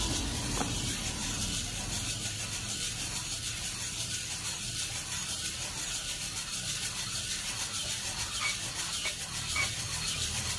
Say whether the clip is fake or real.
fake